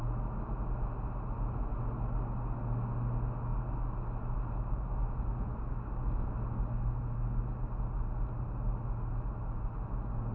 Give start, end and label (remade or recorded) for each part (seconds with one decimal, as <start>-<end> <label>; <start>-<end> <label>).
0.0-10.3 recorded